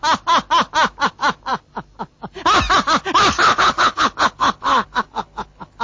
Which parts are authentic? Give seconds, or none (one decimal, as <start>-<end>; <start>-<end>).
0.0-3.4